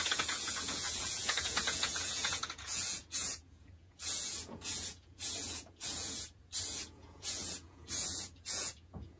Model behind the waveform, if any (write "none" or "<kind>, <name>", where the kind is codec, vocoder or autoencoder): vocoder, Vocos